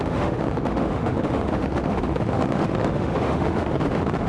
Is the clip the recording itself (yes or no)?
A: no